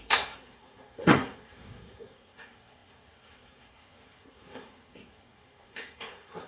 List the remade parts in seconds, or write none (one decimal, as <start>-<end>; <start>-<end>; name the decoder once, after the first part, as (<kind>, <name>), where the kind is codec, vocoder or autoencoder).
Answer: 0.0-6.5 (codec, SNAC)